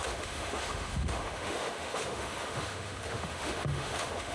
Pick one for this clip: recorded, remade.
remade